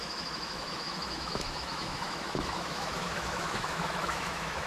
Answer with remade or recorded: remade